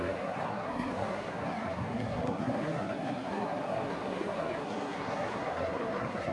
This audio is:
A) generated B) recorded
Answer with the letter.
A